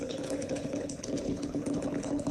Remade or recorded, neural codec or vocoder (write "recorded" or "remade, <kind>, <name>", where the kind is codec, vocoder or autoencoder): remade, codec, HILCodec